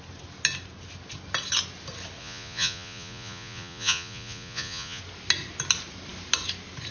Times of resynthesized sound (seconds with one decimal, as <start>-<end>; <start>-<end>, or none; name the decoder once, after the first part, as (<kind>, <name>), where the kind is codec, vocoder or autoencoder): 2.2-5.0 (vocoder, Vocos)

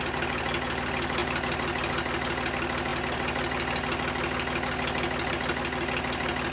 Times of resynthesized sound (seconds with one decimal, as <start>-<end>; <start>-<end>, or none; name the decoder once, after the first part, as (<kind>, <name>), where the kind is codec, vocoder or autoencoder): none

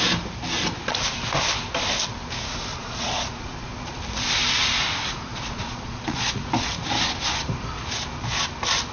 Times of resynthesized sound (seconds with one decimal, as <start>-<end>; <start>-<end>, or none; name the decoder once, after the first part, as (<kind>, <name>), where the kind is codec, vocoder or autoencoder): 2.7-4.0 (vocoder, Vocos); 5.3-6.4

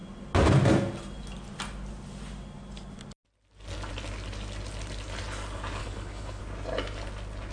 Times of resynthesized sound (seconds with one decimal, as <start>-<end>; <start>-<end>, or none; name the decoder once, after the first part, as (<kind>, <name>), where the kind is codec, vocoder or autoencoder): 5.8-6.4 (codec, HILCodec)

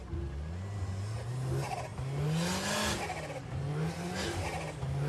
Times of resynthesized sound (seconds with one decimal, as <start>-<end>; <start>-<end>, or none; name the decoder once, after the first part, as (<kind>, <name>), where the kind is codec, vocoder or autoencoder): none

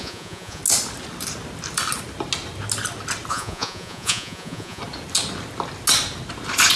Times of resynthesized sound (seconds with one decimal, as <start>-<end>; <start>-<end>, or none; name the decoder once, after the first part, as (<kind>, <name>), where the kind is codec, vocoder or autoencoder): 0.0-0.6 (vocoder, Vocos); 3.3-4.8

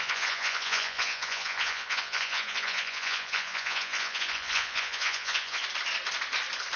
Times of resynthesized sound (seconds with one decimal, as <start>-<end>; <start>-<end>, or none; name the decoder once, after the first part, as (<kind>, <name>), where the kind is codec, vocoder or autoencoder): 0.0-5.6 (vocoder, Vocos)

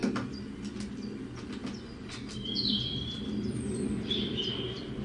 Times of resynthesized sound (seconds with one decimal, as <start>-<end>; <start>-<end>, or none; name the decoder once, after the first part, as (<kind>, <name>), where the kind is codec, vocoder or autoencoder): 1.6-4.6 (vocoder, BigVGAN v2)